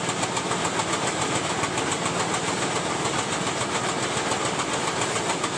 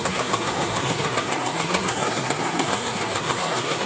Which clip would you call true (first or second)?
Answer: first